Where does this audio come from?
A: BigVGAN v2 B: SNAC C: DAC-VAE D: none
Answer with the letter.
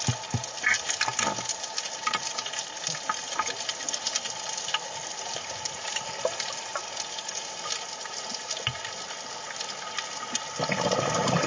D